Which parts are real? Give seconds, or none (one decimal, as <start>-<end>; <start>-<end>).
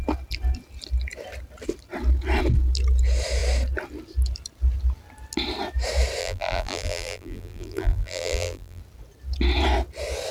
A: 0.0-6.2; 8.8-10.3